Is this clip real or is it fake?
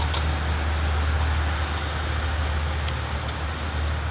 real